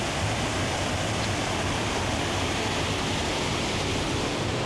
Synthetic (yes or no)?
no